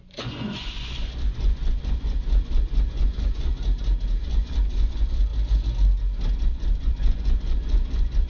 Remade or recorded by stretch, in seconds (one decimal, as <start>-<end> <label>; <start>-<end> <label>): 0.0-3.5 remade; 3.5-4.2 recorded; 4.2-5.3 remade; 5.3-6.3 recorded; 6.3-8.3 remade